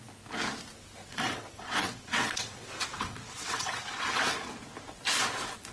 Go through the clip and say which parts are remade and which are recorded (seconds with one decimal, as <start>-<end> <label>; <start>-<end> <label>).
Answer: 0.0-1.1 recorded; 1.1-4.5 remade; 4.5-5.7 recorded